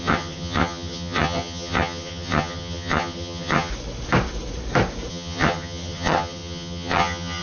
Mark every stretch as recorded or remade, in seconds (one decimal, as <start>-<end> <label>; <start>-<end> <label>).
0.0-3.7 remade; 3.7-5.1 recorded; 5.1-7.4 remade